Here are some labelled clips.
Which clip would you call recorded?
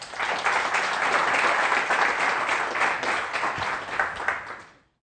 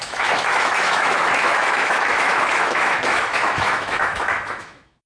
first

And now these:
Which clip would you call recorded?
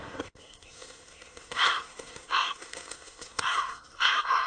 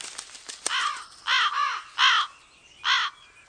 second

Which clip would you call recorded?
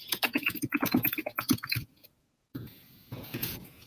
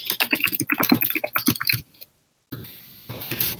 second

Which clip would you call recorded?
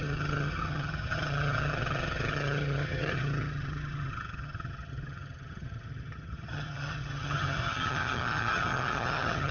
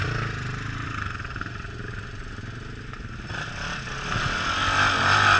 second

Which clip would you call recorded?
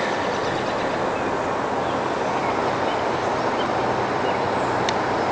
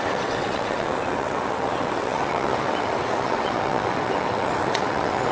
first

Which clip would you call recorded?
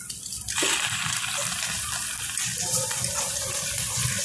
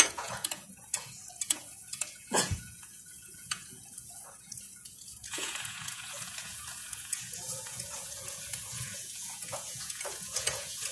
first